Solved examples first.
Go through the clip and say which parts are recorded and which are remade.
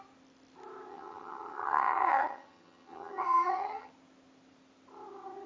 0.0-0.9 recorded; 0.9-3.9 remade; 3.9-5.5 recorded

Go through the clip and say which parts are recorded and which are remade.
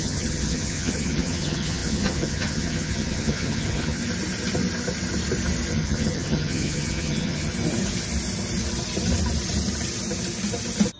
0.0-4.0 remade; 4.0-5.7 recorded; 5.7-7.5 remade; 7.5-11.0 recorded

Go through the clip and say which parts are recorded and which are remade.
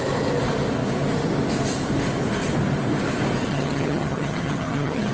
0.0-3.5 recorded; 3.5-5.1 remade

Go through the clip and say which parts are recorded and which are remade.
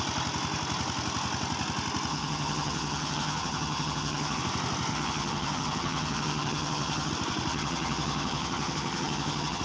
0.0-2.1 recorded; 2.1-4.4 remade; 4.4-4.9 recorded; 4.9-7.1 remade; 7.1-7.5 recorded; 7.5-9.6 remade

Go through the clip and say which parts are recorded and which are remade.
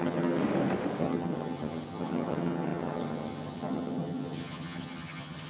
0.0-0.4 remade; 0.4-1.0 recorded; 1.0-5.5 remade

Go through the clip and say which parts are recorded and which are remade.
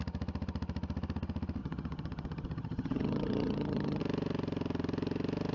0.0-1.6 recorded; 1.6-4.0 remade; 4.0-5.5 recorded